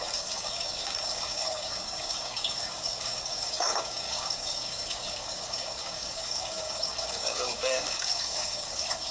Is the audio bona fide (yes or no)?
no